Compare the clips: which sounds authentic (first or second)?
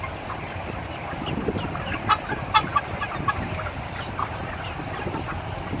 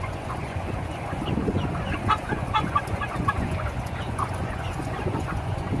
first